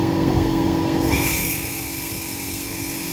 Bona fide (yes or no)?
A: no